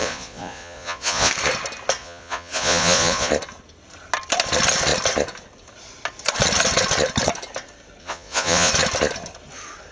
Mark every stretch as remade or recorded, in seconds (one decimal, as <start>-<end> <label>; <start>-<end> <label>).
0.0-1.3 remade; 1.3-2.0 recorded; 2.0-3.3 remade; 3.3-8.0 recorded; 8.0-8.7 remade; 8.7-9.9 recorded